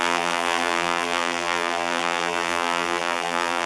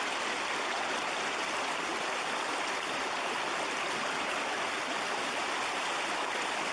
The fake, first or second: first